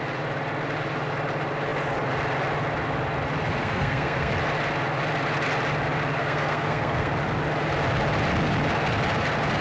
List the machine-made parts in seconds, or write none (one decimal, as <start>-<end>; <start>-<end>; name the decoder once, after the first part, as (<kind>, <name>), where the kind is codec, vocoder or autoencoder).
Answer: 3.6-4.3 (codec, SNAC); 6.2-7.1